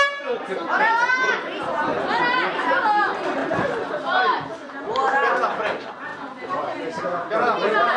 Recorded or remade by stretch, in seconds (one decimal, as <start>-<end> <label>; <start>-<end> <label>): 0.0-8.0 recorded